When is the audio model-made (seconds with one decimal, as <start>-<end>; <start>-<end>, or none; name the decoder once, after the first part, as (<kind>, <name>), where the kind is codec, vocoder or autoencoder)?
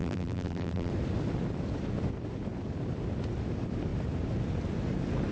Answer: 0.0-0.9 (vocoder, BigVGAN v2)